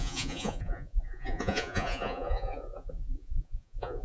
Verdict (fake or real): fake